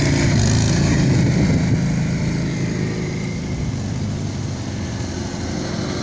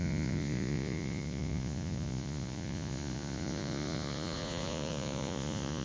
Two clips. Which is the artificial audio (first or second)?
second